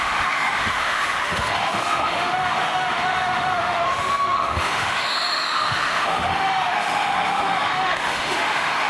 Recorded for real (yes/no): no